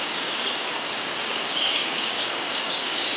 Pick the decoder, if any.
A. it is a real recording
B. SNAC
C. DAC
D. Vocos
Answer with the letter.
C